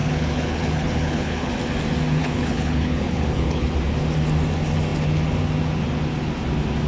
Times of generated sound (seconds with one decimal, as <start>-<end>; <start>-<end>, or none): 0.0-1.5; 2.2-3.7